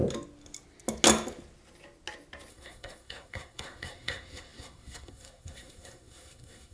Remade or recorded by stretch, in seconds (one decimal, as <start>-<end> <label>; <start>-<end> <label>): 0.0-2.5 recorded; 2.5-6.7 remade